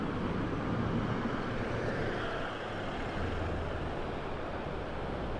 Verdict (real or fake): real